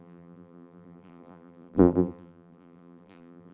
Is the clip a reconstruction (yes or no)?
yes